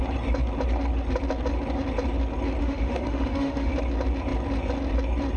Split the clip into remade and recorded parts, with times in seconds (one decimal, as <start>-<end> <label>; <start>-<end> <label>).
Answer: 0.0-2.6 recorded; 2.6-3.7 remade; 3.7-5.4 recorded